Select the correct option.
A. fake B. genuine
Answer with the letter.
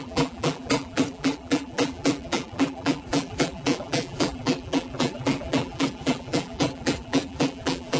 A